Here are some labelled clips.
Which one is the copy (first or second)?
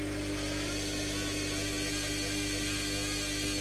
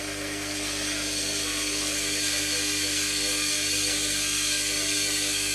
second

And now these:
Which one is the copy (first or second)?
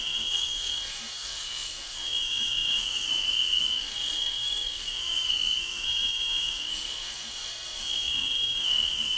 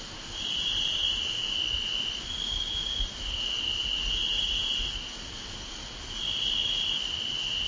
first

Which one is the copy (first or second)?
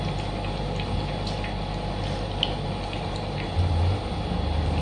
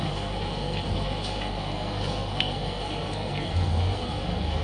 second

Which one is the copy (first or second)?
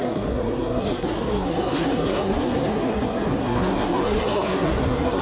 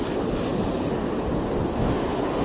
first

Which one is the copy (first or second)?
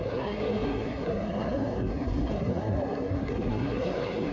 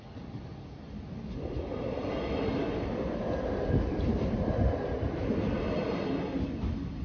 first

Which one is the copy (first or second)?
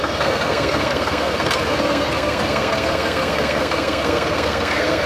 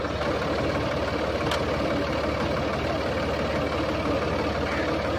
first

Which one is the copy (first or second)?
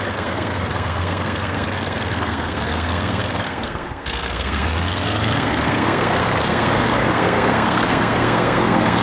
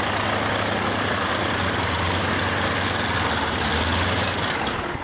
first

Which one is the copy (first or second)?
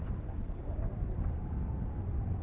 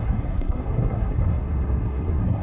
second